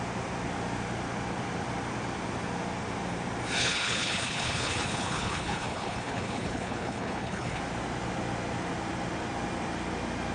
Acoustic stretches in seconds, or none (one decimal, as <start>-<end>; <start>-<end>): 0.0-3.6; 7.6-10.3